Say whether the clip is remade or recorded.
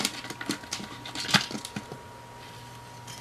recorded